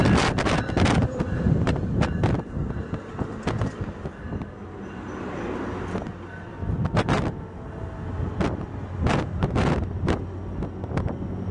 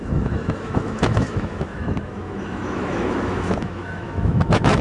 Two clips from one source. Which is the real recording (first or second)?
first